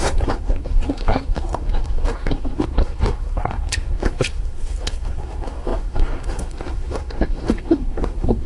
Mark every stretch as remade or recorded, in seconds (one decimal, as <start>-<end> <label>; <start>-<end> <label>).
0.0-8.5 remade